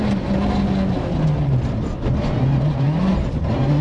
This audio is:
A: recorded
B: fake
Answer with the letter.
A